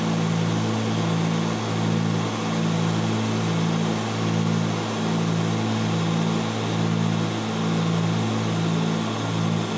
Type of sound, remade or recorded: recorded